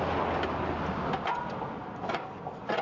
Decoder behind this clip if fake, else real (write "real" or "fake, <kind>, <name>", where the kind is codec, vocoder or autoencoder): real